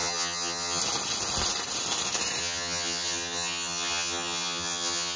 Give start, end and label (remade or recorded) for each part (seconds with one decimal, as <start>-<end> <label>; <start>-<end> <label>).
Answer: 0.0-0.8 remade; 0.8-2.4 recorded; 2.4-5.2 remade